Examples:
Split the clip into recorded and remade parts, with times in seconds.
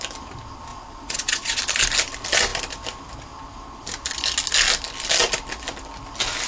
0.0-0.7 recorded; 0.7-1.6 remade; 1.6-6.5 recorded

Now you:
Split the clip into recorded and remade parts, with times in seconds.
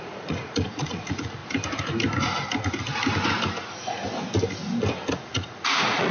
0.0-1.4 remade; 1.4-5.1 recorded; 5.1-6.1 remade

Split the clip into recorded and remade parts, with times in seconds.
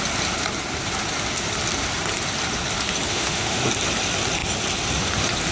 0.0-3.1 recorded; 3.1-3.6 remade; 3.6-5.5 recorded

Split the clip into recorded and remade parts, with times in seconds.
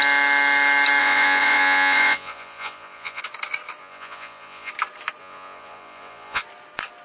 0.0-1.0 recorded; 1.0-3.2 remade; 3.2-3.8 recorded; 3.8-4.7 remade; 4.7-5.2 recorded; 5.2-6.4 remade; 6.4-7.0 recorded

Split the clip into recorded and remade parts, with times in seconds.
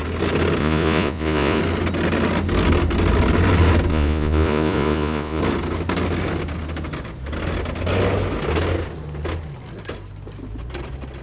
0.0-0.6 recorded; 0.6-1.6 remade; 1.6-3.9 recorded; 3.9-5.4 remade; 5.4-11.2 recorded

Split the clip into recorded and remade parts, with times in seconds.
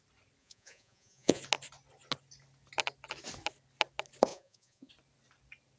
0.0-0.4 recorded; 0.4-1.4 remade; 1.4-4.3 recorded; 4.3-4.9 remade; 4.9-5.8 recorded